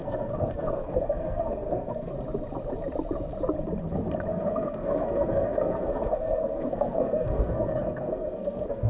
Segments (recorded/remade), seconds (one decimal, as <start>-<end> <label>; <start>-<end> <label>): 0.0-2.1 remade; 2.1-4.3 recorded; 4.3-8.9 remade